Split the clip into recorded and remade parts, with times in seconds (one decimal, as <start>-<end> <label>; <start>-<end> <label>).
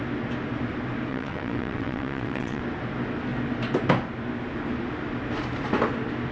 0.0-1.1 recorded; 1.1-2.6 remade; 2.6-6.3 recorded